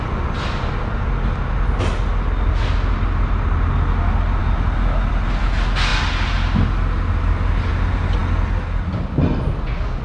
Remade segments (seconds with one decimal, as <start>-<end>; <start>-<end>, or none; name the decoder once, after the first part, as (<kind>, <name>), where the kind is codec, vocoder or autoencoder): none